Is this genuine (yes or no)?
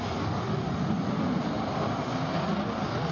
yes